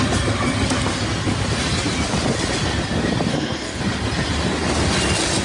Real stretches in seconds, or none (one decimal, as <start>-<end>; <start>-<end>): 0.0-3.3; 3.8-5.4